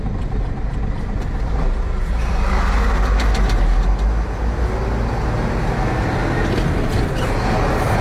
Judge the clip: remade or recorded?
recorded